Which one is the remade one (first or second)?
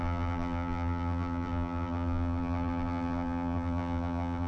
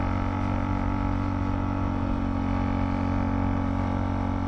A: first